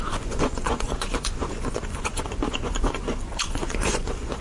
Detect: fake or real fake